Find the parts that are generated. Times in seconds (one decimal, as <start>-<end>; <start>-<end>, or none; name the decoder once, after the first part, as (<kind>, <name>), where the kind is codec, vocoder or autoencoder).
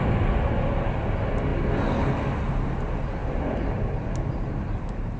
3.2-3.9 (vocoder, BigVGAN v2)